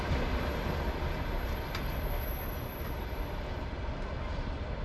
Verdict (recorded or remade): recorded